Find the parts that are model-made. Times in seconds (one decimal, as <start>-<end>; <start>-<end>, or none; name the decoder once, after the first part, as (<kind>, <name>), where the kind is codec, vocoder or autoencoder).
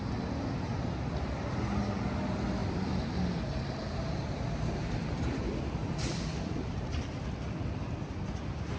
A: 2.6-5.2 (vocoder, BigVGAN v2); 5.8-7.8